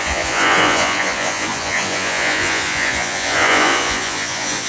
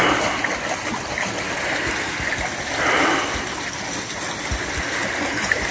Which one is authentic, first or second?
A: second